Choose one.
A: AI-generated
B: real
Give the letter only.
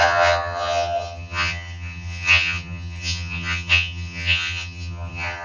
A